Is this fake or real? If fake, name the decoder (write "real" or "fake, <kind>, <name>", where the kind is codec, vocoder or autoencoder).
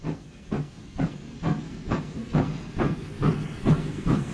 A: fake, codec, SNAC